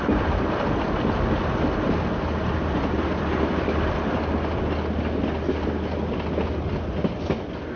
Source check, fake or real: real